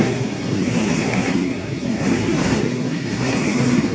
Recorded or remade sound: remade